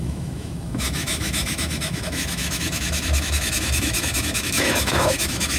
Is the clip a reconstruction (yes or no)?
yes